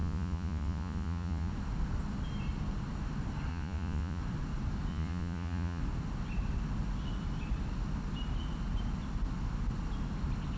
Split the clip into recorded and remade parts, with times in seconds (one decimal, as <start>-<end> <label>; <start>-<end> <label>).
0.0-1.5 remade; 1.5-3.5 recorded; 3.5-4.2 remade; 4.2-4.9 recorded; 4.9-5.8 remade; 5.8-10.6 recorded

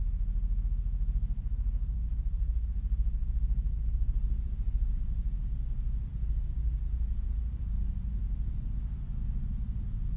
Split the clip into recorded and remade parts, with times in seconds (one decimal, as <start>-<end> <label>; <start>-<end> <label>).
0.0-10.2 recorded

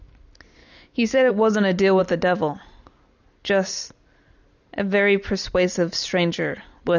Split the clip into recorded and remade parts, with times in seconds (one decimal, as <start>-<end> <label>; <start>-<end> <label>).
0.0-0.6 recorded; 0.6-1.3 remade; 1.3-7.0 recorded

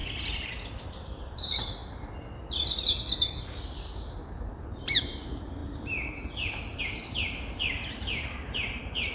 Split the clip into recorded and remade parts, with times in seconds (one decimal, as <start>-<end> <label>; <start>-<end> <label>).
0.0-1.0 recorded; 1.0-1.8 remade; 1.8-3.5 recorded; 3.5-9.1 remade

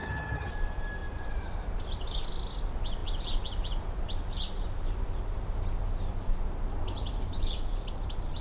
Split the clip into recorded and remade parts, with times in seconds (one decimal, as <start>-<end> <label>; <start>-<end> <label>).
0.0-0.5 remade; 0.5-8.4 recorded

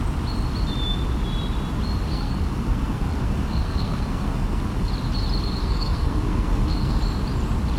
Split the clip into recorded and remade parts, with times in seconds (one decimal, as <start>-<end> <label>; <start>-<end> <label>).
0.0-2.1 recorded; 2.1-4.9 remade; 4.9-5.6 recorded; 5.6-7.0 remade; 7.0-7.8 recorded

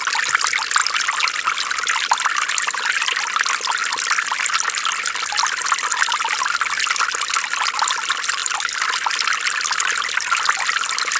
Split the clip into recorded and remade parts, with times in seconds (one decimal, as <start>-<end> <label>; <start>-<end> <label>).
0.0-11.2 recorded